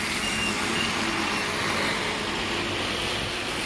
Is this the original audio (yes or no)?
yes